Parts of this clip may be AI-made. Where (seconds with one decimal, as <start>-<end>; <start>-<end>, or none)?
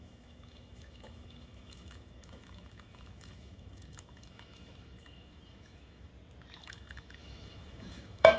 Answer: 0.0-6.1; 6.6-8.4